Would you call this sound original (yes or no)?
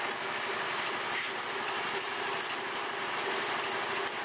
yes